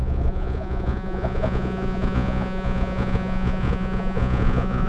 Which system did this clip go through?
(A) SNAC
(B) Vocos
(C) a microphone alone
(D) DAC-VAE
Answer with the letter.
B